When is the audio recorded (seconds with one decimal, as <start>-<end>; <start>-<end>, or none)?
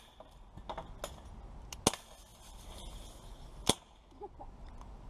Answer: 0.0-5.1